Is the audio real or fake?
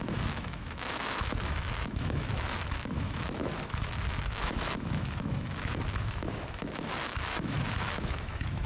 fake